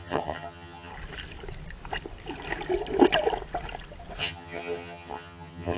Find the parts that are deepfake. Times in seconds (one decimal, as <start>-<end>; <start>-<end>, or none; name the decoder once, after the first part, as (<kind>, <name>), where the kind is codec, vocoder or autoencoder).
0.0-0.9 (vocoder, HiFi-GAN); 4.2-5.8